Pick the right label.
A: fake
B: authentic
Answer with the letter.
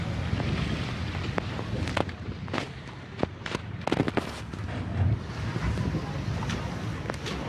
B